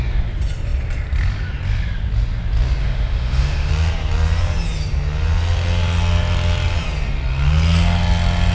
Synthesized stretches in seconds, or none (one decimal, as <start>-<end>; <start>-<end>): 2.8-3.7